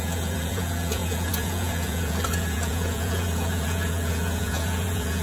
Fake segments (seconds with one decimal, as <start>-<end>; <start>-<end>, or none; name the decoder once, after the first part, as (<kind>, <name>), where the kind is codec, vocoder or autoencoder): 0.0-5.2 (vocoder, Vocos)